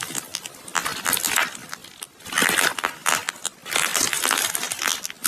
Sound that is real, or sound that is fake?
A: real